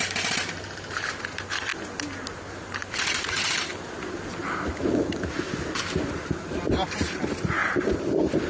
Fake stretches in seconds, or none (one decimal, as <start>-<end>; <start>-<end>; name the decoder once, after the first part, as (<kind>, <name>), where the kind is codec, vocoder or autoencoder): 0.0-1.7 (vocoder, BigVGAN v2); 2.5-3.7; 6.6-8.5